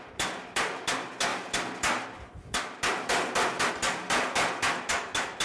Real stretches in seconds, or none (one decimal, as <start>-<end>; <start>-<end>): 0.0-5.4